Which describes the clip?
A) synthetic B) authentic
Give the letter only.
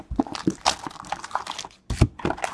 B